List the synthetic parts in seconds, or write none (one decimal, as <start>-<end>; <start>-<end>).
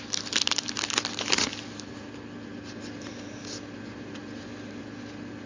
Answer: none